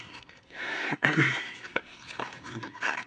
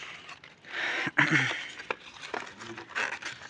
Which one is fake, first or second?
first